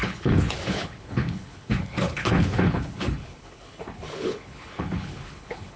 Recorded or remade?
remade